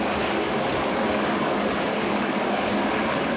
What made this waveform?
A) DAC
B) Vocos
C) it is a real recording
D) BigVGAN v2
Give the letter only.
A